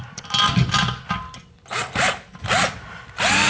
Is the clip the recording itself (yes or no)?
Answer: no